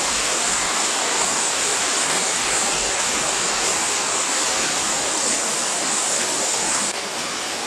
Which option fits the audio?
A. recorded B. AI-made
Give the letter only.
B